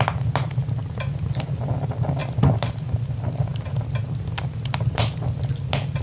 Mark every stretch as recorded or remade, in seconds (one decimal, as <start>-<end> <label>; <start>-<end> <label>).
0.0-6.0 recorded